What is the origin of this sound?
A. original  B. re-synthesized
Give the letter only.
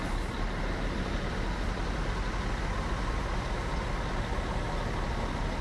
A